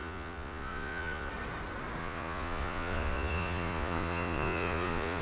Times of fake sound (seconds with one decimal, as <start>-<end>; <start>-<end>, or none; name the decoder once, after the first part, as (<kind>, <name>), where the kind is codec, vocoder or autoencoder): 0.0-1.3 (vocoder, Vocos); 2.0-5.2